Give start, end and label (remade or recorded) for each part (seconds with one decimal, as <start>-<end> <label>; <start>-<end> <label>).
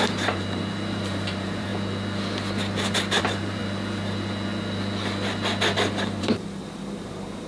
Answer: 0.0-1.7 remade; 1.7-3.2 recorded; 3.2-3.6 remade; 3.6-6.2 recorded; 6.2-7.5 remade